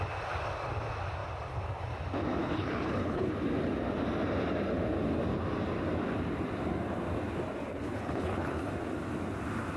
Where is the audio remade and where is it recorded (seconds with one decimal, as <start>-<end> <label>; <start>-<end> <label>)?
0.0-2.4 recorded; 2.4-3.3 remade; 3.3-7.7 recorded; 7.7-8.7 remade; 8.7-9.8 recorded